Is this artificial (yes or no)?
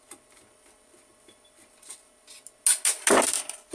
no